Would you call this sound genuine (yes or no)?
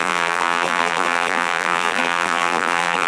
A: no